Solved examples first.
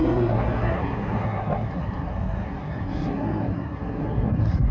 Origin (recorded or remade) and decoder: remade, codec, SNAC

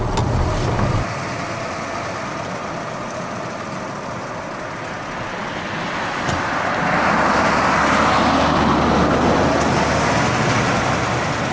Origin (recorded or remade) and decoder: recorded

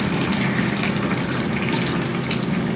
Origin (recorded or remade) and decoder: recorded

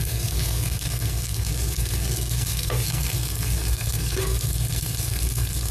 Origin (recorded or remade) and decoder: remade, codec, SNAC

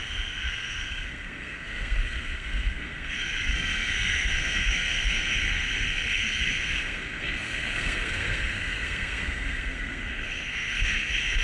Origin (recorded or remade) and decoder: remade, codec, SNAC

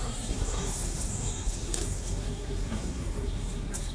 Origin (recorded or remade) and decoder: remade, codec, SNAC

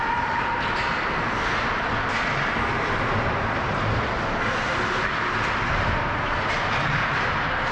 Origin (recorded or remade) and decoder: recorded